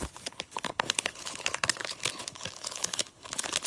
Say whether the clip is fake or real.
fake